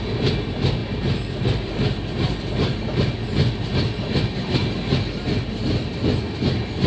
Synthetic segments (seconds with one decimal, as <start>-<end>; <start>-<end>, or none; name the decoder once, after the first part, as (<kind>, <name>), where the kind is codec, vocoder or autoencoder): none